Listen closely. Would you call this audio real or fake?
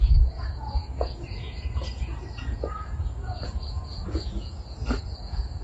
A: fake